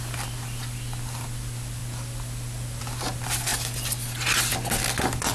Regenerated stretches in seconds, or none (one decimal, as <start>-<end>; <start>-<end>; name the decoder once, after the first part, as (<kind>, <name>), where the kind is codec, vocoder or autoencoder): none